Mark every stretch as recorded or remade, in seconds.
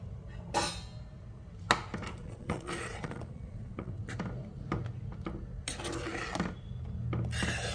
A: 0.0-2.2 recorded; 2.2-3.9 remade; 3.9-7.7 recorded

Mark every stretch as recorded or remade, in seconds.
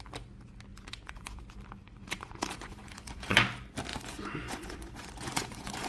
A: 0.0-0.7 recorded; 0.7-1.4 remade; 1.4-1.8 recorded; 1.8-3.4 remade; 3.4-3.9 recorded; 3.9-5.9 remade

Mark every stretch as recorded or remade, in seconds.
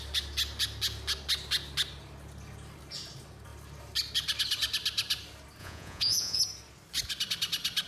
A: 0.0-5.6 recorded; 5.6-6.4 remade; 6.4-7.9 recorded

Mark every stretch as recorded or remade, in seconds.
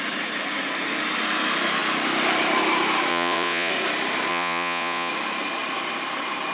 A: 0.0-3.1 recorded; 3.1-3.7 remade; 3.7-4.3 recorded; 4.3-5.1 remade; 5.1-6.5 recorded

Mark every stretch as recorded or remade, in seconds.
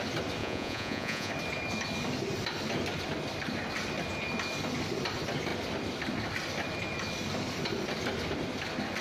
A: 0.0-0.4 recorded; 0.4-1.3 remade; 1.3-9.0 recorded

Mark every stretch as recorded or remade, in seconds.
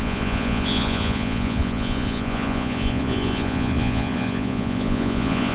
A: 0.0-5.5 remade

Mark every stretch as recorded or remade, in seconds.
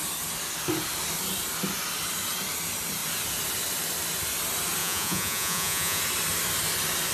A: 0.0-4.8 recorded; 4.8-6.0 remade; 6.0-7.1 recorded